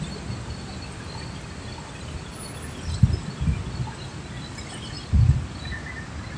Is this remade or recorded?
recorded